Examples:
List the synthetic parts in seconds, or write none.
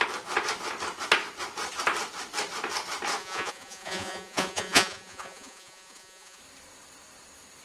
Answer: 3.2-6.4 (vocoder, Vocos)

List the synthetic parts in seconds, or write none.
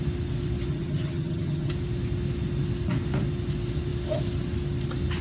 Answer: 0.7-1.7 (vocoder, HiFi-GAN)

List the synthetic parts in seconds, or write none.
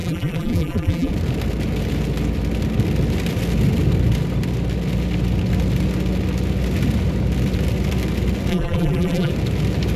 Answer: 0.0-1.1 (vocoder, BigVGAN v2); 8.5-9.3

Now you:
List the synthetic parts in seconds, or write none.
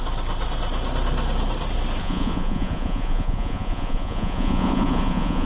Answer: 2.0-5.5 (vocoder, Vocos)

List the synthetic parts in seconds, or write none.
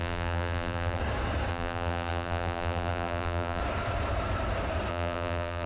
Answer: 0.0-1.0 (vocoder, BigVGAN v2); 1.5-3.6; 4.9-5.7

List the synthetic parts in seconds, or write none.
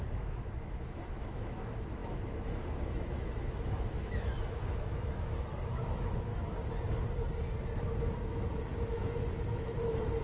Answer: 0.0-6.3 (autoencoder, DAC-VAE); 8.2-10.2